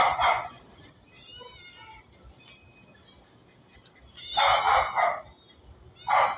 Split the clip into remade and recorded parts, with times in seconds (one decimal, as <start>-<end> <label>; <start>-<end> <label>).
0.0-0.6 remade; 0.6-6.4 recorded